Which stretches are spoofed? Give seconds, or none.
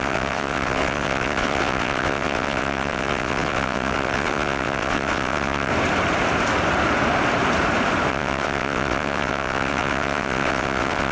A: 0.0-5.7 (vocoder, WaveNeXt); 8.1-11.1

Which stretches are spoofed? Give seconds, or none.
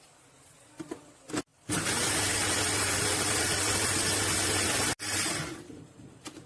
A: none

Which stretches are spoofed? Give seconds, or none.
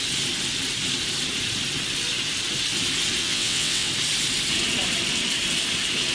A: 3.2-3.9 (vocoder, WaveNeXt)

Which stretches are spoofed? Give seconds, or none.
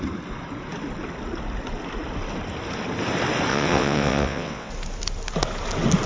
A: 3.5-4.7 (vocoder, WaveNeXt)